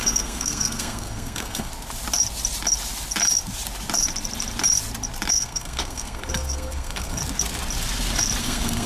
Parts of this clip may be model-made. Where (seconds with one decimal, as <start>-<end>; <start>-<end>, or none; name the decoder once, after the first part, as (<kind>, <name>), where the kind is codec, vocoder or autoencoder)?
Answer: 0.0-1.7 (codec, SNAC); 5.3-7.2; 8.4-8.9